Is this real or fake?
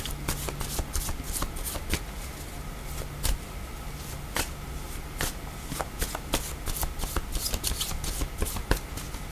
real